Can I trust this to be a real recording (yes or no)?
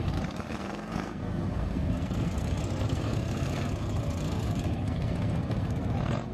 no